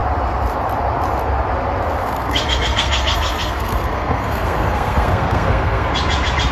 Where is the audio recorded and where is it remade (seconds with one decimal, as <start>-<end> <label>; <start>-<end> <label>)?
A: 0.0-2.0 recorded; 2.0-5.9 remade; 5.9-6.5 recorded